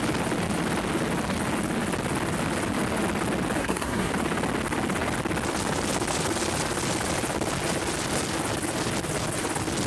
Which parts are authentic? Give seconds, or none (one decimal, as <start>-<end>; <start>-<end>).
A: 0.0-3.6; 4.1-9.9